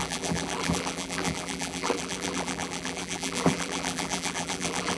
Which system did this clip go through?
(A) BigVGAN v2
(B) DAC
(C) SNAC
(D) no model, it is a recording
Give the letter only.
A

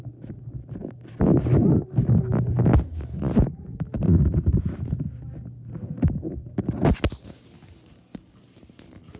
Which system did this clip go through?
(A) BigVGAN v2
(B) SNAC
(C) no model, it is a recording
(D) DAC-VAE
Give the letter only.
C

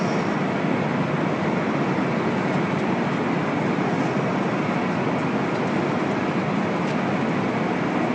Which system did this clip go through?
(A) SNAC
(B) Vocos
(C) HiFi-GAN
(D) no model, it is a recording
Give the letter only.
D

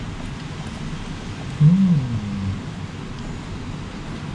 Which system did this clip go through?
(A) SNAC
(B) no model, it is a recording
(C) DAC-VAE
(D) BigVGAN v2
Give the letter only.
B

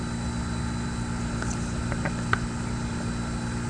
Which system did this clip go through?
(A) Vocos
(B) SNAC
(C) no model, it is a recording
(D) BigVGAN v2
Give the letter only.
C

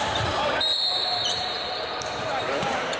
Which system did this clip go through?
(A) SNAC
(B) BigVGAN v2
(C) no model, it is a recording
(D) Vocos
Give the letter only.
B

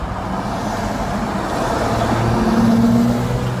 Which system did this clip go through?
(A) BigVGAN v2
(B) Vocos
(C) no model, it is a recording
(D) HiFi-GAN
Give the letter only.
C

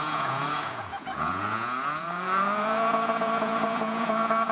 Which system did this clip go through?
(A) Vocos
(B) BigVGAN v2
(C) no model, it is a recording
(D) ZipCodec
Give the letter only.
A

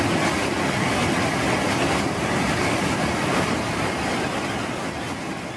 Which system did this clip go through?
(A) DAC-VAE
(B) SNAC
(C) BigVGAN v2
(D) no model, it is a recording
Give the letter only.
D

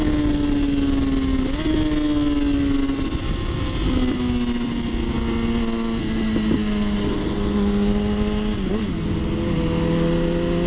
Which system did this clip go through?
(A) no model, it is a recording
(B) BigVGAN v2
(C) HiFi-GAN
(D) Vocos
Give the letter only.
A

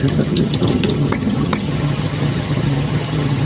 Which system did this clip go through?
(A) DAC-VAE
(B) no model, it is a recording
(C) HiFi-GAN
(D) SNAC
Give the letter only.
C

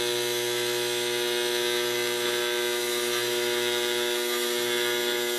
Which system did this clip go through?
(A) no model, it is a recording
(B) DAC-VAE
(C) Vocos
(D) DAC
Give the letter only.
B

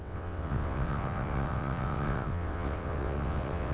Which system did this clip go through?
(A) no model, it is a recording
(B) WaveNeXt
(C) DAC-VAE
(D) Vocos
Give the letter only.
B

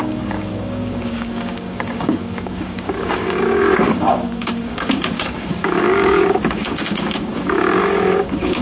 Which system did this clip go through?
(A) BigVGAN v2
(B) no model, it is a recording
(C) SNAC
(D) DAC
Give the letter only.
D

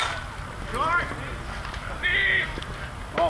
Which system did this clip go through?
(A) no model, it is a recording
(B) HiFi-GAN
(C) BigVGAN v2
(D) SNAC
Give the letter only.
A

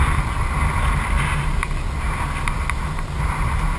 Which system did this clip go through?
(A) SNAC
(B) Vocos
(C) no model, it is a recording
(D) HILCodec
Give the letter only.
C